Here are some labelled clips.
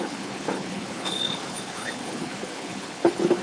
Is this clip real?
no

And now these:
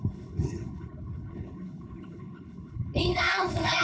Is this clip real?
no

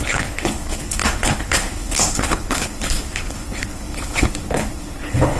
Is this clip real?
no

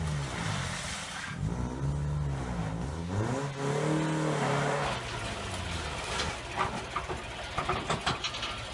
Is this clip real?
yes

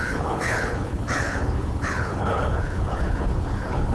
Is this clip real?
no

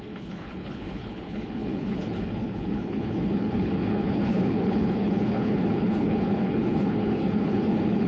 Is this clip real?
no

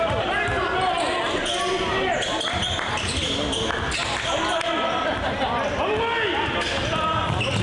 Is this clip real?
yes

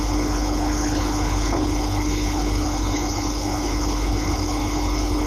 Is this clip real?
no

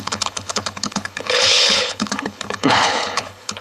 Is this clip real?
no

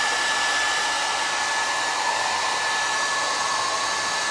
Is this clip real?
yes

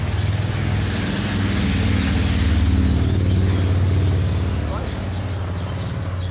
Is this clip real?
yes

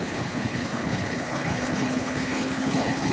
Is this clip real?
no